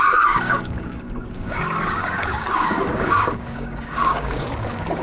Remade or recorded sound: remade